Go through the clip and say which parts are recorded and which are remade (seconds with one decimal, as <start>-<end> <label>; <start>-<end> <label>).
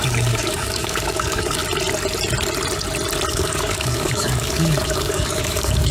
0.0-1.6 remade; 1.6-3.3 recorded; 3.3-5.9 remade